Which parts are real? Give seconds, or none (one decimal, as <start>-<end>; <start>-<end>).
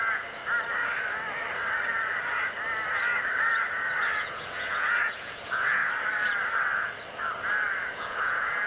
0.4-4.1; 5.8-7.9